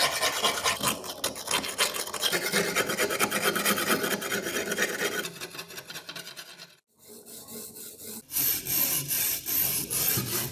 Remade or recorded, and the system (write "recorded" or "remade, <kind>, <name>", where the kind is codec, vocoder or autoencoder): recorded